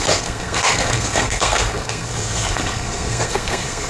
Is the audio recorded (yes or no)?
no